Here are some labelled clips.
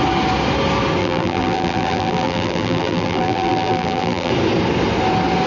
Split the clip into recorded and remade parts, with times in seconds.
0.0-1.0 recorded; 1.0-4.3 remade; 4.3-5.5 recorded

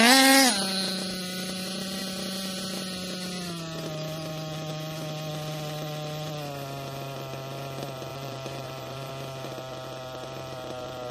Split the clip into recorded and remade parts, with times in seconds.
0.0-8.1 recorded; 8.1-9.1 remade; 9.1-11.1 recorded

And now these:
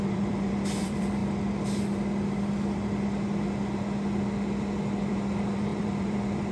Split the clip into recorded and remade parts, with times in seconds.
0.0-1.2 remade; 1.2-5.1 recorded; 5.1-6.5 remade